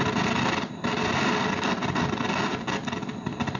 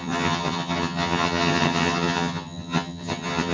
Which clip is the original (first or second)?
first